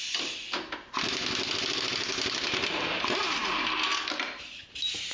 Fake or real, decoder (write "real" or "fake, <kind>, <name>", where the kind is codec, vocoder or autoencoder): real